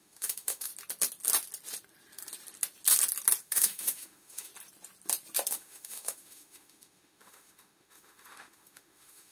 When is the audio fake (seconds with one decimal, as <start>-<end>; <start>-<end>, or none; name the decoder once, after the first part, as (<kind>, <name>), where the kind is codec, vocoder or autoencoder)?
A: 0.0-0.7 (autoencoder, DAC-VAE); 3.4-4.5; 5.5-9.3